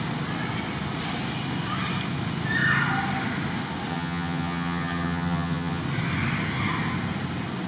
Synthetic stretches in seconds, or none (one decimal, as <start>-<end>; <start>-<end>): 3.9-5.8